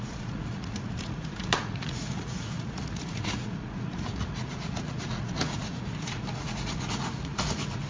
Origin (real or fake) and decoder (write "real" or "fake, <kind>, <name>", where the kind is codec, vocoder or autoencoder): fake, vocoder, Vocos